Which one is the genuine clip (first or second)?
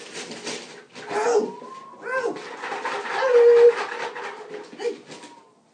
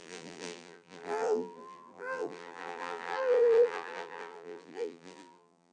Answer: first